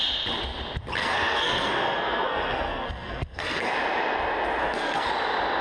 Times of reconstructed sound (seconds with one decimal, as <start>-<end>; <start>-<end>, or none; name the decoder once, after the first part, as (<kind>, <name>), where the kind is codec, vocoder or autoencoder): 1.0-3.7 (codec, SNAC); 4.6-5.1